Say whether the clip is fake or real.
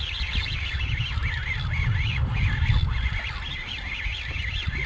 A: real